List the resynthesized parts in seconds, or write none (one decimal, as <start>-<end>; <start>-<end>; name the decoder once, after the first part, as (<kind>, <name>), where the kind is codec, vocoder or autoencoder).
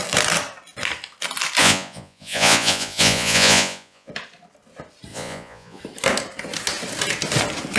1.6-4.1 (vocoder, Vocos); 5.1-5.8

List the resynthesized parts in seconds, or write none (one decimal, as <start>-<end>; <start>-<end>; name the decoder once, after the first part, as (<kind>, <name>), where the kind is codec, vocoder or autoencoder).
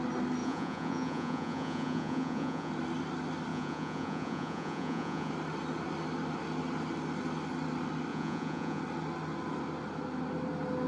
0.4-2.7 (vocoder, Vocos); 3.5-5.3; 8.1-8.8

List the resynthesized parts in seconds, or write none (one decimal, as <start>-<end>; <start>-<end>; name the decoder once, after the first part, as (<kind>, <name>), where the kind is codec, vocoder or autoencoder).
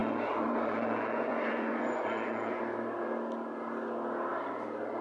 0.0-2.6 (vocoder, Vocos)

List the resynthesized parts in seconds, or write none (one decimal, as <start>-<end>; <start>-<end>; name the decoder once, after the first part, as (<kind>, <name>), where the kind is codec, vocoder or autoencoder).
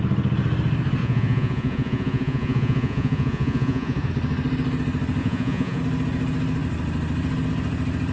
1.0-4.1 (vocoder, Vocos); 5.2-5.8